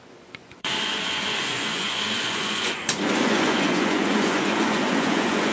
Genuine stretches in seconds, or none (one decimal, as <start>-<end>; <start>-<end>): none